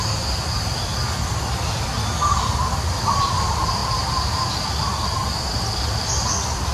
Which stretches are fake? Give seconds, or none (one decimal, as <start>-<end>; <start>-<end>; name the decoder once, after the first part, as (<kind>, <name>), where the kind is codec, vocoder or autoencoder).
0.9-3.2 (vocoder, BigVGAN v2); 3.8-4.7